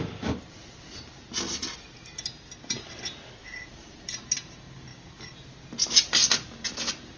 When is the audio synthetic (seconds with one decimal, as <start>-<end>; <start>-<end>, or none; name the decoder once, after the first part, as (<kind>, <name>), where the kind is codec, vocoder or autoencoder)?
3.4-4.1 (vocoder, BigVGAN v2)